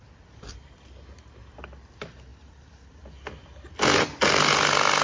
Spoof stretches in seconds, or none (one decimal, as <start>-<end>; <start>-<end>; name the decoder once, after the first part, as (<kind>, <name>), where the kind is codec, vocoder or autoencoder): none